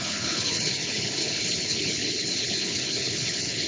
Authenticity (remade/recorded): remade